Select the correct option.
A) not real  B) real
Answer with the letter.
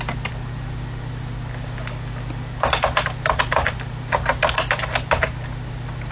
B